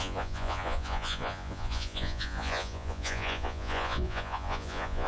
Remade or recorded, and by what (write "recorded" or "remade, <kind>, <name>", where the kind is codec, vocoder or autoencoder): remade, vocoder, Vocos